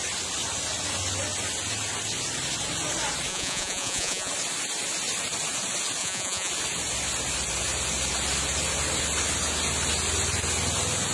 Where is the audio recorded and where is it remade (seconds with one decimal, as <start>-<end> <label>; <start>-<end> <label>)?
0.0-3.3 recorded; 3.3-4.3 remade; 4.3-6.0 recorded; 6.0-6.5 remade; 6.5-11.1 recorded